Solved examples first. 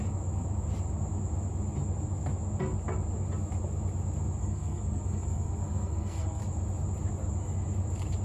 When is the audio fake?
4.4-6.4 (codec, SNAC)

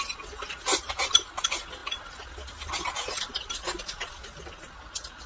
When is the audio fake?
0.7-1.3 (vocoder, BigVGAN v2)

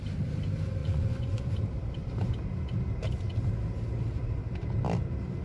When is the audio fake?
0.8-1.5 (vocoder, Vocos)

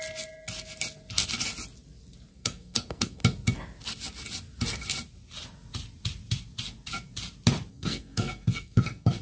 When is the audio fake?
2.3-3.2 (codec, SNAC); 7.7-9.2

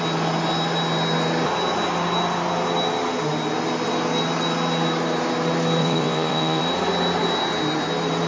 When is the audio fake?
5.8-6.6 (vocoder, WaveNeXt)